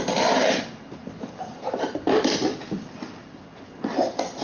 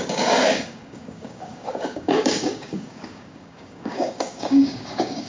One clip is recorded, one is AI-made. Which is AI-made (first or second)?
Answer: second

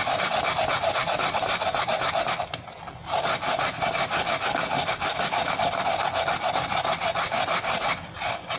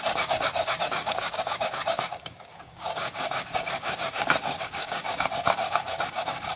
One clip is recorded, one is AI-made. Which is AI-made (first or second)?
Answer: second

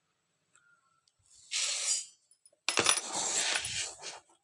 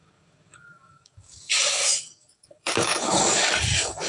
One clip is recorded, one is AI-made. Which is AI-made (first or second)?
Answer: second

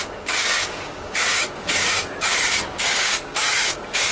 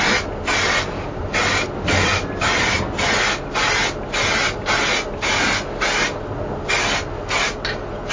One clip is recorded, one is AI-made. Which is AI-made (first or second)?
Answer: first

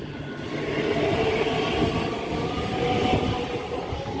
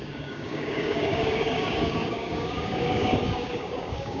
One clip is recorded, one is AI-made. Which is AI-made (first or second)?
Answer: second